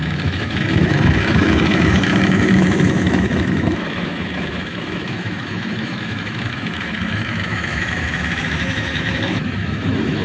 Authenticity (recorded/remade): remade